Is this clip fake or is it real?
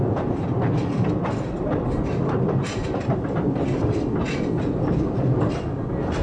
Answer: real